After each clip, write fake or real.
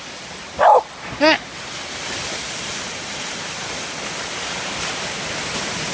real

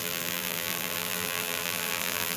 fake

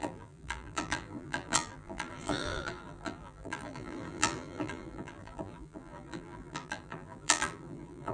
fake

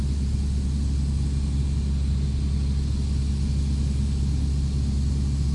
real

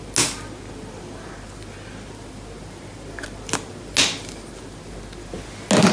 real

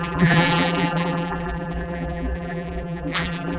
fake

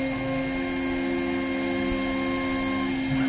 real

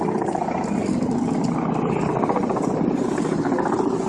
real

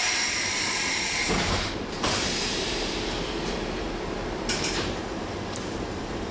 fake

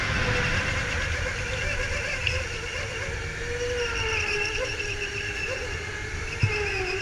real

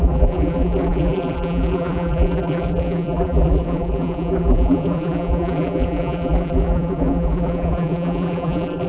fake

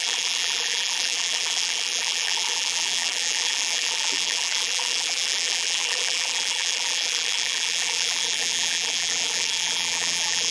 fake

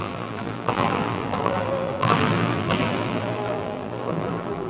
fake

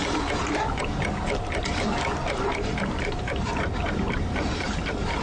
fake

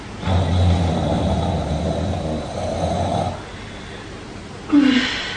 real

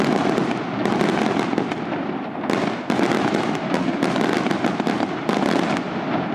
real